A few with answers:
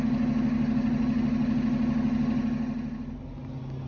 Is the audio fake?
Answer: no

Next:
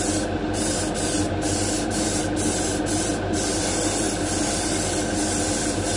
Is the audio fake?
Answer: no